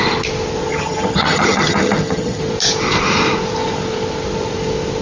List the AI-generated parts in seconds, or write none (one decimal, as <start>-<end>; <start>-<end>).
0.7-2.4